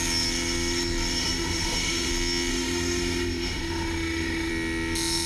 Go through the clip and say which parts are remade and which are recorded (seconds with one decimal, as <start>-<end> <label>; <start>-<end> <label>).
0.0-1.2 recorded; 1.2-2.1 remade; 2.1-2.5 recorded; 2.5-4.5 remade; 4.5-5.3 recorded